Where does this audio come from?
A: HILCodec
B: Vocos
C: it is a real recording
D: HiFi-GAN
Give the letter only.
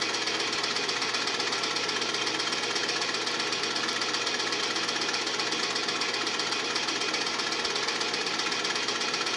C